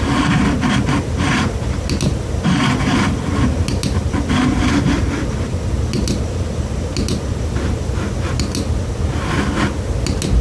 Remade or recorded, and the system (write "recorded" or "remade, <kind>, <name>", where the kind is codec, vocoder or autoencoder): recorded